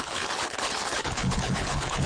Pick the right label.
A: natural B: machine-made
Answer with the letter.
B